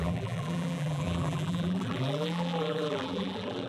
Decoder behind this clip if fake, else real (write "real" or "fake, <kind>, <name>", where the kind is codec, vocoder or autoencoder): fake, vocoder, BigVGAN v2